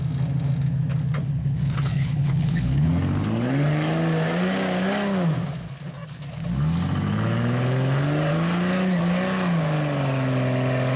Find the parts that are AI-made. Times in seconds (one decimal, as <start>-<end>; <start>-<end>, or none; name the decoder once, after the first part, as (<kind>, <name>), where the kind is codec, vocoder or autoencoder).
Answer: 1.2-2.9 (codec, HILCodec)